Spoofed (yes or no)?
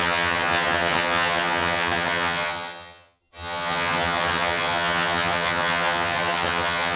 yes